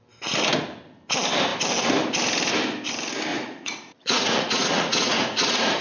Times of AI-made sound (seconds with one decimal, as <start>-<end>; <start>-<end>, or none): 3.3-5.8